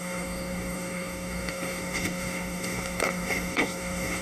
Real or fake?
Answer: fake